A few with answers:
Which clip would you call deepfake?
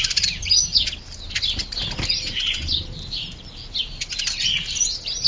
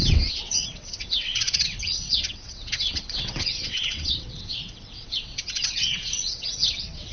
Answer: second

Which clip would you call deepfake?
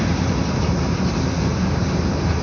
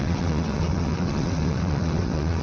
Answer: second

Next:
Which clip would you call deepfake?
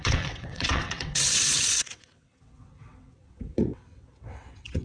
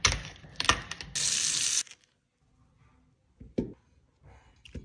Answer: first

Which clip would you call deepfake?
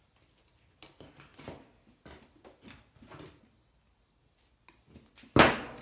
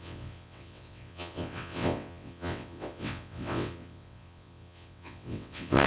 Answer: second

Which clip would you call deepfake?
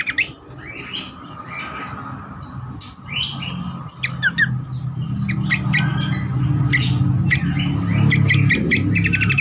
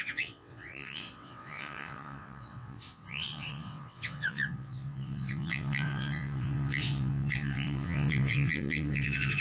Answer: second